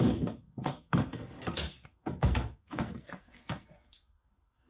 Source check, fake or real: fake